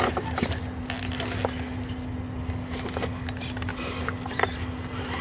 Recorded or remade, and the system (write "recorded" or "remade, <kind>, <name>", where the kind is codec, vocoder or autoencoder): recorded